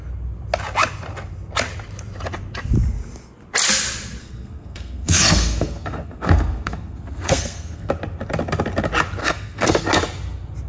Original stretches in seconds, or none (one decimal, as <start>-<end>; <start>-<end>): 0.0-4.2; 7.9-9.2; 9.8-10.7